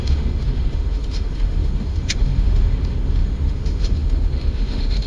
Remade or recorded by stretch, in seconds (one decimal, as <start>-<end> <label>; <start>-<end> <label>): 0.0-5.1 remade